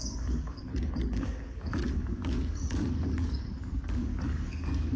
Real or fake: fake